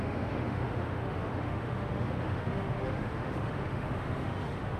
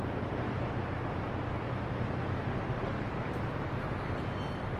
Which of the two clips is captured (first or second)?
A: second